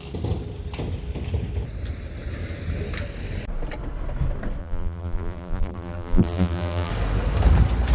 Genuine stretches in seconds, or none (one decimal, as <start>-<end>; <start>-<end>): 0.0-4.6; 6.9-7.9